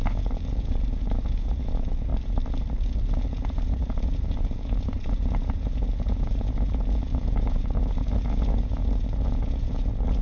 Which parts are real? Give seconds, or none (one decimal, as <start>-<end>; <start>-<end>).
2.1-3.2